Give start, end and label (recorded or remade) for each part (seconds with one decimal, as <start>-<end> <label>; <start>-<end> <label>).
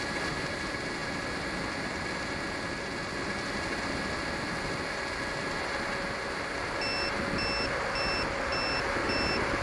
0.0-9.6 recorded